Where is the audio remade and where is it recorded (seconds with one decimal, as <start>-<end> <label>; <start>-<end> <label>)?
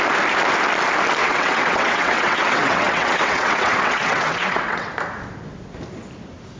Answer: 0.0-1.2 recorded; 1.2-4.9 remade; 4.9-6.6 recorded